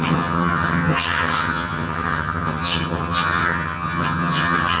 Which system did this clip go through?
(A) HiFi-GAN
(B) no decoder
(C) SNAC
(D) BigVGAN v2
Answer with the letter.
A